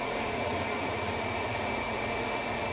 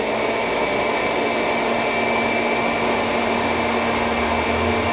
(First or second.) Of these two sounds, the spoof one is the first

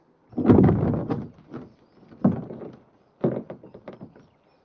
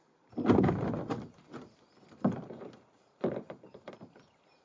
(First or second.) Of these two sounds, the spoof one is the second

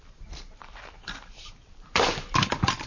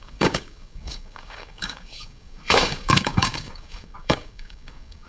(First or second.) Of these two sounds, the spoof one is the second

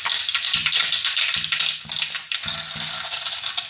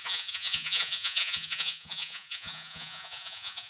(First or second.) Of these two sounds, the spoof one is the second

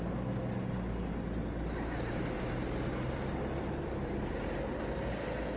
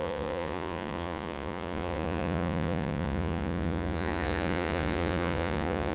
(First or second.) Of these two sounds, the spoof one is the second